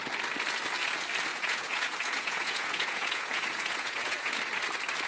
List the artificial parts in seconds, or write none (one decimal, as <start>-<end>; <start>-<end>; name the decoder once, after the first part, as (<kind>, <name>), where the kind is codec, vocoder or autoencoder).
1.3-4.4 (vocoder, Vocos)